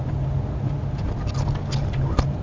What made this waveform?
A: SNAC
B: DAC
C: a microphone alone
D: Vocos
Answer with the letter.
C